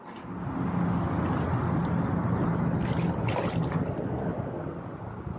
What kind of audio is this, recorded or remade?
recorded